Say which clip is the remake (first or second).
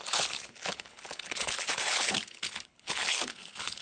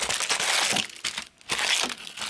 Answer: first